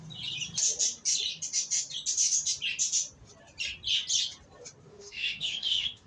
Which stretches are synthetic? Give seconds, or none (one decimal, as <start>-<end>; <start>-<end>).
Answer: 4.9-6.1